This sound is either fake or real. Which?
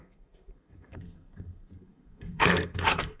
fake